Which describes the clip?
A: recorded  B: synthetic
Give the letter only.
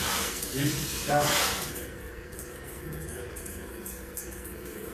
B